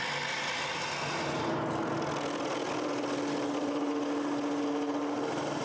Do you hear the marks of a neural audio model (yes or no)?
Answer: no